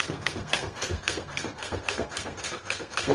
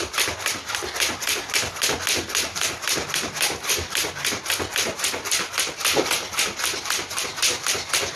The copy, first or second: first